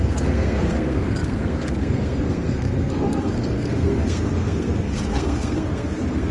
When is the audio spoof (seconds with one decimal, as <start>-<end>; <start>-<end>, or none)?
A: 0.0-6.3